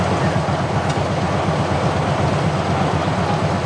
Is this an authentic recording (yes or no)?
yes